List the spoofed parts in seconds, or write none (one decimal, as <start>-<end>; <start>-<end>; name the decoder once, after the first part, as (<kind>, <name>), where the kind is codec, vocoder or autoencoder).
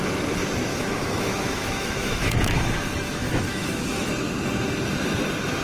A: 0.7-4.1 (autoencoder, DAC-VAE)